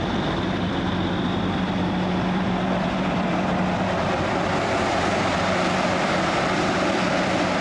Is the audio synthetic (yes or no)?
yes